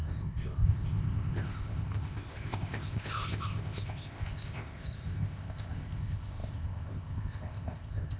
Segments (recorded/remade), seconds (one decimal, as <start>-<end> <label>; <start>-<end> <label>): 0.0-8.2 remade